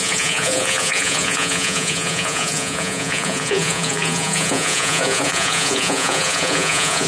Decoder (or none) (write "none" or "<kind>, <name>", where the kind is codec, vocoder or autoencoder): vocoder, Vocos